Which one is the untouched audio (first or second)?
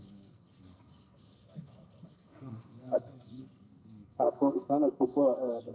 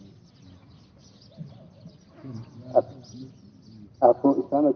second